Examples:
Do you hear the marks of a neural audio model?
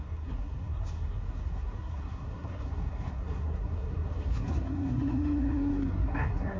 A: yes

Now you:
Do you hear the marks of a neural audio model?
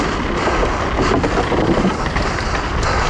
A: no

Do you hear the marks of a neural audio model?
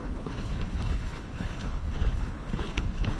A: yes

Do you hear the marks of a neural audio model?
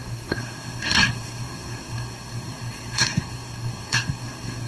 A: yes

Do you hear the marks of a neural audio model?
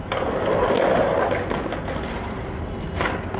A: no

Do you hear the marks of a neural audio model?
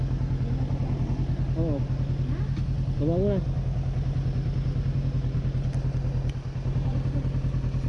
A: no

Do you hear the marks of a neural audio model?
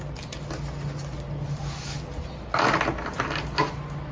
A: no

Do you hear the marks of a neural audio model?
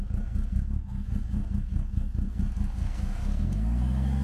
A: yes